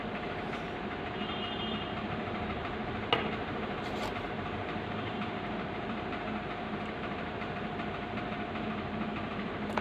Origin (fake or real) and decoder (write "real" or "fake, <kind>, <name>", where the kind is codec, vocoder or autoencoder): fake, vocoder, BigVGAN v2